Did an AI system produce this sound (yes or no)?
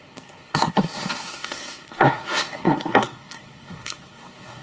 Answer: yes